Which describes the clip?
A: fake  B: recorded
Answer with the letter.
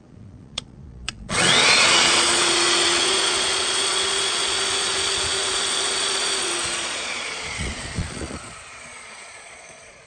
A